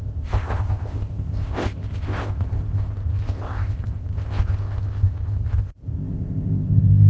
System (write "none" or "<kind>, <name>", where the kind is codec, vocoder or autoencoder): codec, ZipCodec